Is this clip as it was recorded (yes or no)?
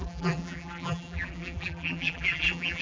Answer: no